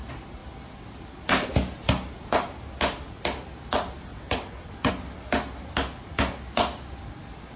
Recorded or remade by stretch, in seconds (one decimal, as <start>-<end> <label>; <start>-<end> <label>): 0.0-4.1 recorded; 4.1-4.9 remade; 4.9-7.6 recorded